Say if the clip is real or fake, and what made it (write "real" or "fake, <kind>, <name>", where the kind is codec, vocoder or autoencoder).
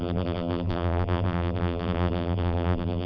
fake, vocoder, BigVGAN v2